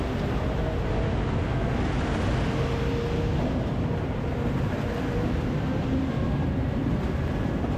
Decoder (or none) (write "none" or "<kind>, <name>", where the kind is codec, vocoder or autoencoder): none